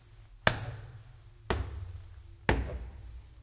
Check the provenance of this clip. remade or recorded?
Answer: recorded